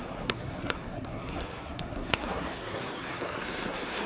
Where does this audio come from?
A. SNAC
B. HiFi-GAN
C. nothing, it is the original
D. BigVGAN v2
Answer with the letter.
A